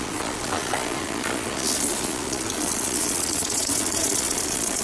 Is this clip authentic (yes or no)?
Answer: no